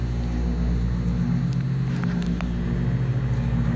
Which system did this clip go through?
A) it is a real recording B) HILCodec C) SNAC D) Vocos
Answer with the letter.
A